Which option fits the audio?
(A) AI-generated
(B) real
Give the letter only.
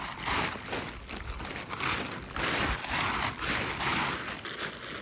B